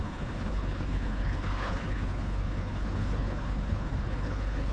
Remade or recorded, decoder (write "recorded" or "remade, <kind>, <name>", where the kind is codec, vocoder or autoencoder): remade, codec, HILCodec